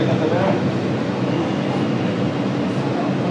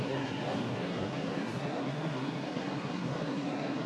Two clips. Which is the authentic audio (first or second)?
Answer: first